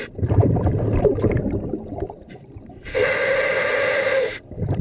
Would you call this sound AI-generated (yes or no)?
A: yes